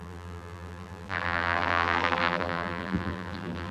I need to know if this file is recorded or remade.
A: remade